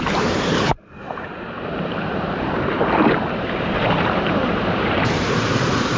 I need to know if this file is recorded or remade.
remade